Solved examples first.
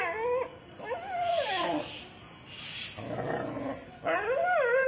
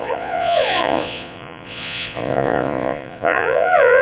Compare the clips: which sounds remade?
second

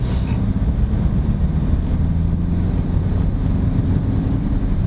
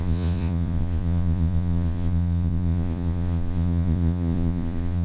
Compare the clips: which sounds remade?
second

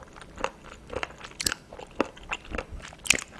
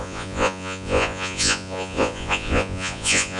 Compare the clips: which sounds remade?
second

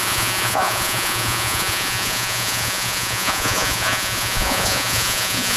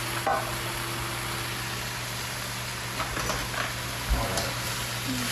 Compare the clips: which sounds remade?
first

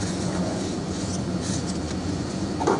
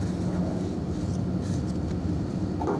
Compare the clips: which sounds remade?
first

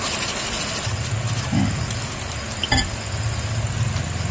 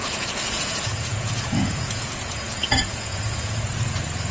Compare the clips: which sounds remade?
second